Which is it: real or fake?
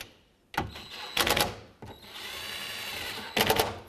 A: real